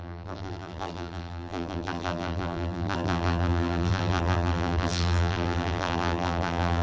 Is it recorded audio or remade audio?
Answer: remade